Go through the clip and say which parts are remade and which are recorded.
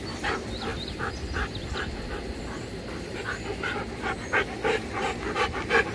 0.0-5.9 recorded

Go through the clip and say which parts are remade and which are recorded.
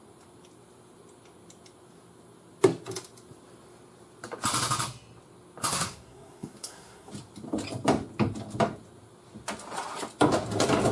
0.0-5.7 recorded; 5.7-7.1 remade; 7.1-10.9 recorded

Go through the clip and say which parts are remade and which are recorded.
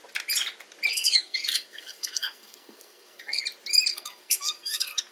0.0-0.9 recorded; 0.9-3.4 remade; 3.4-3.9 recorded; 3.9-5.1 remade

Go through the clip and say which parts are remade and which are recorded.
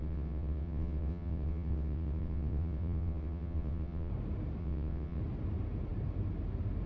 0.0-4.1 remade; 4.1-4.6 recorded; 4.6-5.2 remade; 5.2-6.9 recorded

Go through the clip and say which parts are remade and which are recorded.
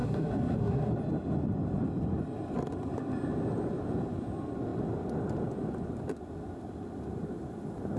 0.0-0.9 remade; 0.9-8.0 recorded